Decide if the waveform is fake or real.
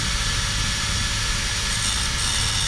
real